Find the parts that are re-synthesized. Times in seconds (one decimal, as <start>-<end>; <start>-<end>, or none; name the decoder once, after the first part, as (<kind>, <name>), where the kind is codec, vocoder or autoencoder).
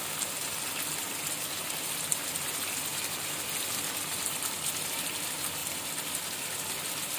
none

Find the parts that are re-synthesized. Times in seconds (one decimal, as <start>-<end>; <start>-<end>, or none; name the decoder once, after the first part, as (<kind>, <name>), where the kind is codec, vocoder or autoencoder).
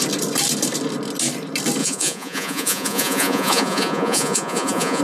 1.8-5.0 (vocoder, Vocos)